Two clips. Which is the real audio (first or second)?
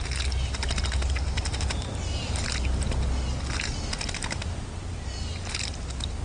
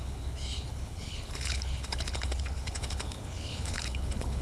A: first